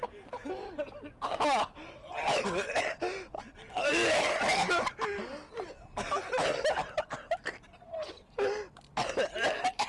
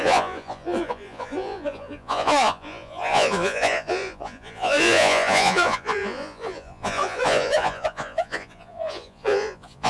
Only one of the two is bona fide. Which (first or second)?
first